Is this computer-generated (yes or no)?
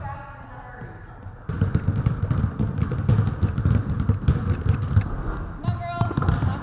no